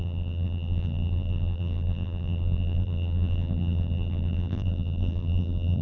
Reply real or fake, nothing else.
fake